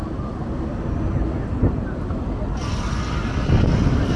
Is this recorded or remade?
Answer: recorded